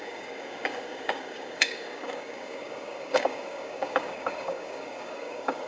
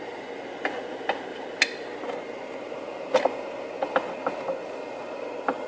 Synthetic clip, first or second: first